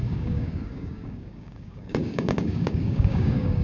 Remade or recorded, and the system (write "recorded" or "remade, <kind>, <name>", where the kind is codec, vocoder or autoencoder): remade, codec, DAC